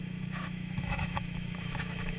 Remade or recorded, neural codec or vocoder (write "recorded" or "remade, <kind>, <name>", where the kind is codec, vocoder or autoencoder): remade, autoencoder, DAC-VAE